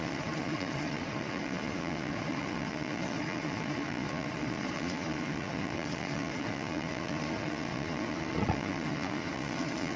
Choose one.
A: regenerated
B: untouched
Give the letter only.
A